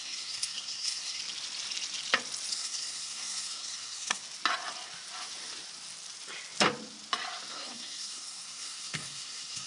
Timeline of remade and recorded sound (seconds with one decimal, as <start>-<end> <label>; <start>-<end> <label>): 0.0-1.2 remade; 1.2-2.5 recorded; 2.5-4.2 remade; 4.2-7.5 recorded; 7.5-9.7 remade